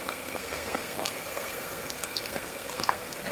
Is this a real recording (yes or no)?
no